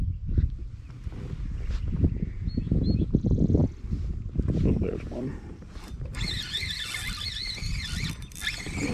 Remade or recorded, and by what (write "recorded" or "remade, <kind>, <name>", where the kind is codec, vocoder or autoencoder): recorded